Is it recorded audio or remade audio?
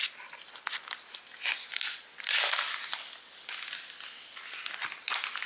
recorded